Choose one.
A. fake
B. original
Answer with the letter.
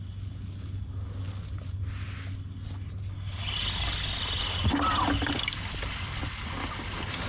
B